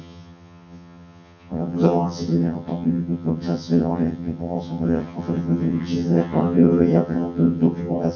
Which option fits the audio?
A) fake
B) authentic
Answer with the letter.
A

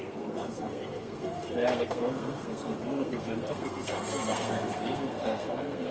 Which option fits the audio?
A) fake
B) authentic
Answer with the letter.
A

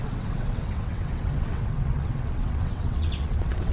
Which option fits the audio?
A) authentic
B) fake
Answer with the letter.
B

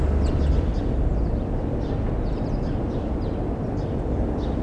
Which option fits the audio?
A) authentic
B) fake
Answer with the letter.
A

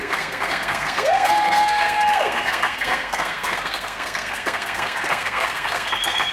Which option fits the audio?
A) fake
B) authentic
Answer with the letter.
A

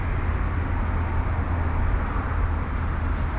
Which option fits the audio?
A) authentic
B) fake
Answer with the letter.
A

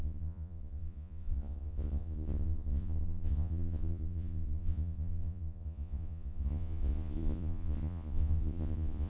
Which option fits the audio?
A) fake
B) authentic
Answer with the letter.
A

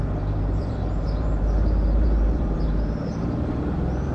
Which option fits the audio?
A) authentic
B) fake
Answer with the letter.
B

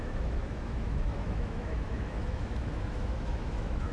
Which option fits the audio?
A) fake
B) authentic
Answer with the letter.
A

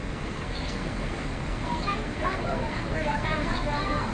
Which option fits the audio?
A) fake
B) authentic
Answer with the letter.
A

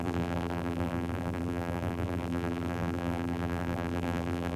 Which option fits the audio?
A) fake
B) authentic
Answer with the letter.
A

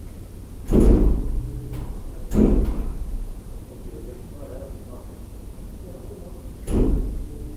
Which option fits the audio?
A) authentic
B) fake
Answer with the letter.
A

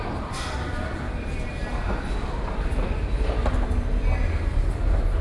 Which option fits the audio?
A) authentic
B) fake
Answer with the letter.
A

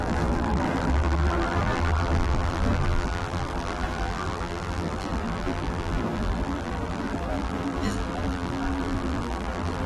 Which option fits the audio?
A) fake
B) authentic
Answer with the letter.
A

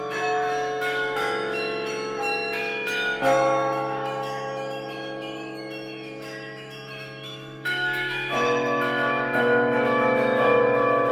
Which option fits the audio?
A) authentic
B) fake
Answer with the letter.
B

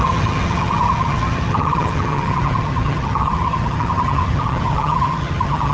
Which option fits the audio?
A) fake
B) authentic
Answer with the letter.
A